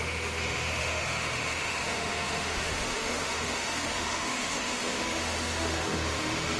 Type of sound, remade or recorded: remade